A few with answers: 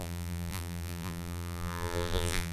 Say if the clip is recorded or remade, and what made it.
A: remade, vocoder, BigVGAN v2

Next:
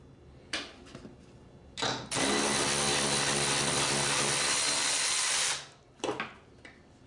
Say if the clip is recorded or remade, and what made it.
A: recorded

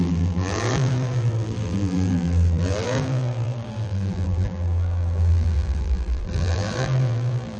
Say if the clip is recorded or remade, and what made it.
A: remade, vocoder, BigVGAN v2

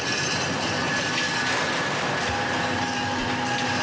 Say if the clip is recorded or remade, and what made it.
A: remade, vocoder, BigVGAN v2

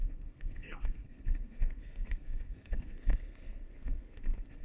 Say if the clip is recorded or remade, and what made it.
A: remade, codec, SNAC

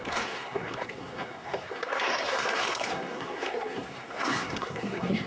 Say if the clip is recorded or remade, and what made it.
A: remade, codec, SNAC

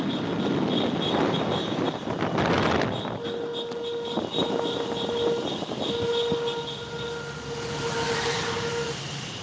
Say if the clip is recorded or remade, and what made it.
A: recorded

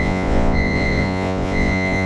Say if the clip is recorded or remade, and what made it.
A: remade, vocoder, Vocos